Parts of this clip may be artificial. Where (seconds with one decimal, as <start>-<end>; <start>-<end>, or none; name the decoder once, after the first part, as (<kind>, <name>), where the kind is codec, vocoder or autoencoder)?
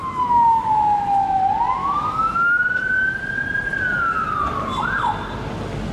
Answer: 0.0-1.4 (autoencoder, DAC-VAE); 1.8-2.6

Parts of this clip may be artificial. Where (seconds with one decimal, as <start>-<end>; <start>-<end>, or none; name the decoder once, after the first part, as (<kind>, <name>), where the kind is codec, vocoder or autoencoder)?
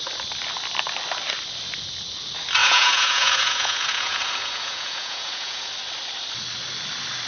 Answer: 2.6-5.7 (vocoder, Vocos)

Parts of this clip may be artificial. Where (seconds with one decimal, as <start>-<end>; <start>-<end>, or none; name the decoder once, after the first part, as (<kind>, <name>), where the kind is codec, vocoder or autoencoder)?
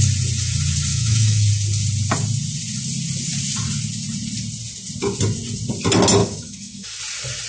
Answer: 0.9-1.5 (autoencoder, DAC-VAE); 6.2-7.0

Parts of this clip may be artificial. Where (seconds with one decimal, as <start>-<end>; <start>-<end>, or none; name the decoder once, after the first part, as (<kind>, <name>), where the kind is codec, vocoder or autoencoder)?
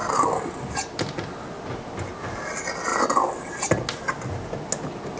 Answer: none